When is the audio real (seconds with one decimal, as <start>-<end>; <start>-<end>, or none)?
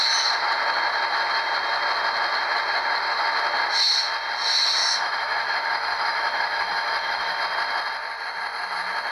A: 0.0-4.8; 7.4-9.1